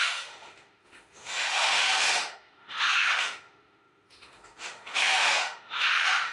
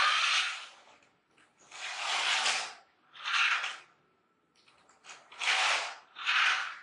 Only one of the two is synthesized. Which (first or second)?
first